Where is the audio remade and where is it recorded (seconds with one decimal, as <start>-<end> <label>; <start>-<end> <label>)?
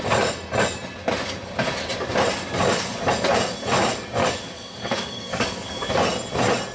0.0-4.2 recorded; 4.2-5.9 remade; 5.9-6.7 recorded